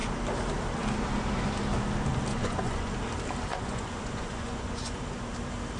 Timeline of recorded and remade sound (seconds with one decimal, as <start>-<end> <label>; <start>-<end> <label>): 0.0-2.3 recorded; 2.3-2.9 remade; 2.9-3.5 recorded; 3.5-5.0 remade; 5.0-5.8 recorded